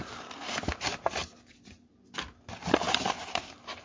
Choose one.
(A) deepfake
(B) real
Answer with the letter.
B